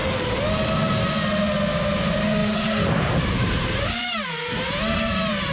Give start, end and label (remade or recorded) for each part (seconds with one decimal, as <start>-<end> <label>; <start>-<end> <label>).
0.0-2.4 recorded; 2.4-5.5 remade